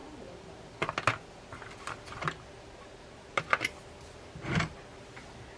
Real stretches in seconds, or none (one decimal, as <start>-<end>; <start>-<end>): 0.0-5.6